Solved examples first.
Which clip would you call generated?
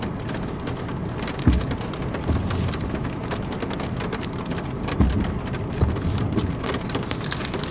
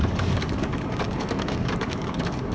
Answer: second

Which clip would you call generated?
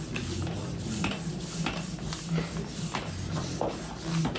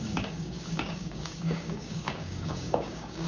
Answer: second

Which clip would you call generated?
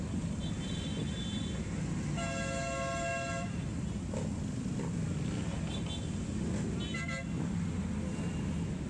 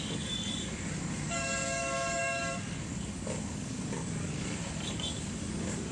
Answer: second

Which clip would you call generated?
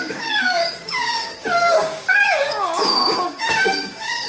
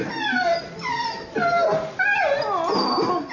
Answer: first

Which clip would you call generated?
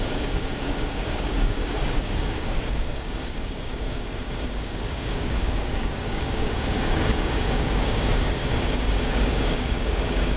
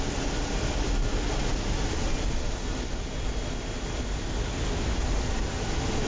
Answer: first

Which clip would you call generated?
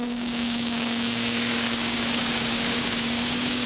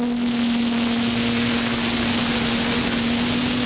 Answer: first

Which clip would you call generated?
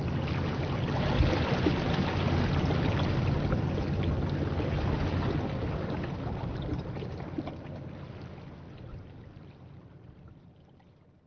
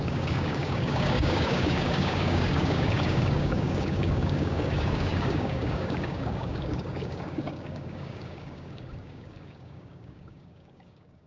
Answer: second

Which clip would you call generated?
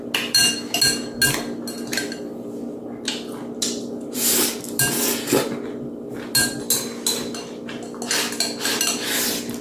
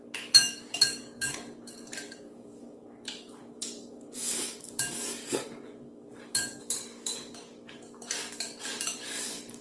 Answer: second